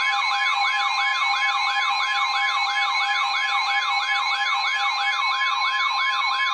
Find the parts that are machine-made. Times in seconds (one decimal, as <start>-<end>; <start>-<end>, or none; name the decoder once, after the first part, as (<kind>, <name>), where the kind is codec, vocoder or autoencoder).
none